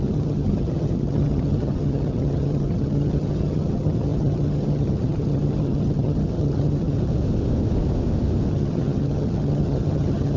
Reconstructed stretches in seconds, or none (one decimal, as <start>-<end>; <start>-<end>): 0.0-7.1; 8.5-10.4